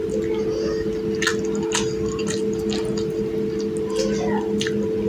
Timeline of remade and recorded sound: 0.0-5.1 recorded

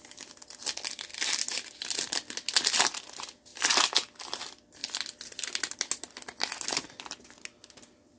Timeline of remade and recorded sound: 0.0-3.5 recorded; 3.5-4.2 remade; 4.2-8.2 recorded

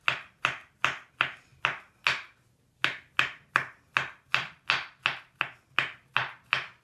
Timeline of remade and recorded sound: 0.0-6.8 recorded